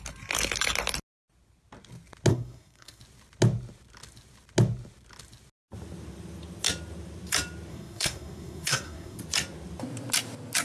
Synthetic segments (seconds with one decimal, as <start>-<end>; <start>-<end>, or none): 2.3-3.0; 7.7-9.2